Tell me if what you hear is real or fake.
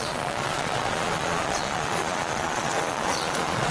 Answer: fake